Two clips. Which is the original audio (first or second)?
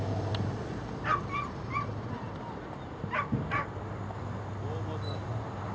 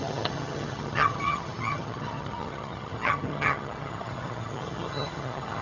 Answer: first